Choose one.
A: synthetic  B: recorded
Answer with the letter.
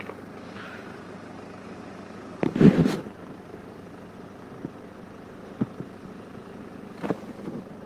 B